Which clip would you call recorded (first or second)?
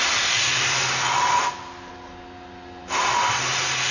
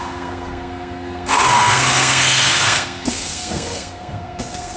first